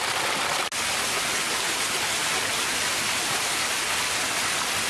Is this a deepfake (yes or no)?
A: no